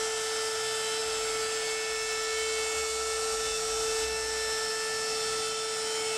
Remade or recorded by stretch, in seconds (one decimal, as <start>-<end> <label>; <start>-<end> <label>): 0.0-6.2 recorded